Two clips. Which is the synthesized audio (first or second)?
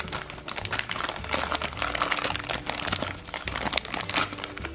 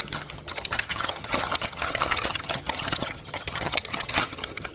second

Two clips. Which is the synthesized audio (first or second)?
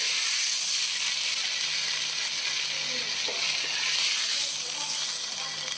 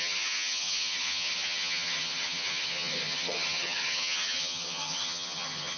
second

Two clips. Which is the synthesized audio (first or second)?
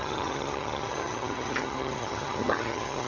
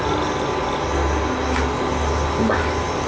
first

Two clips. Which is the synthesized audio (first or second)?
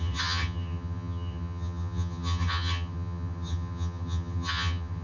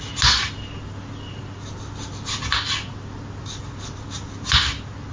first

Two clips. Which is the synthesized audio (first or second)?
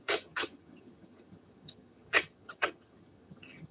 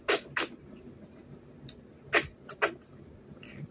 first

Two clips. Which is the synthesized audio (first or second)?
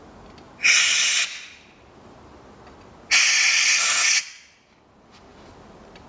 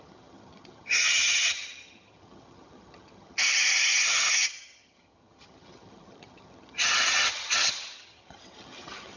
second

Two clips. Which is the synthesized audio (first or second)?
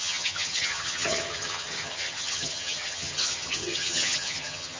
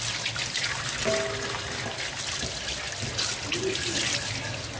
first